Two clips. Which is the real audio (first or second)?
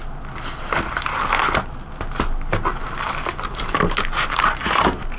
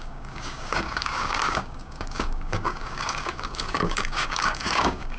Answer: first